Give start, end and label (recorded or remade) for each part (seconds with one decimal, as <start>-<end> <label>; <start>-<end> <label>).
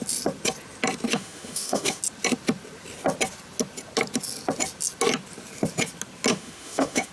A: 0.0-1.1 recorded; 1.1-2.0 remade; 2.0-6.3 recorded; 6.3-7.1 remade